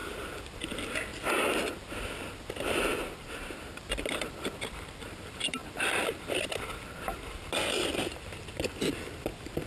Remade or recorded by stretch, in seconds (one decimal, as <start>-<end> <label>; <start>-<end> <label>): 0.0-0.7 recorded; 0.7-1.1 remade; 1.1-3.9 recorded; 3.9-5.6 remade; 5.6-8.4 recorded; 8.4-9.7 remade